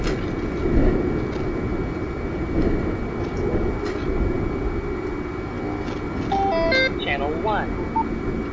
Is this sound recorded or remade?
recorded